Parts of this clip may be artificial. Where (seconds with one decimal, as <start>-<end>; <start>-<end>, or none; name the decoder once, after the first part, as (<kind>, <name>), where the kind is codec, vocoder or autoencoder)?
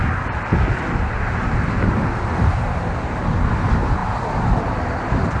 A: none